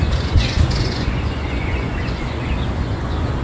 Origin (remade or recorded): remade